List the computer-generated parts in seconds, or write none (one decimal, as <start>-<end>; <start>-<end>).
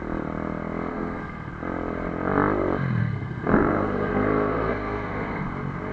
0.9-1.5; 3.0-5.5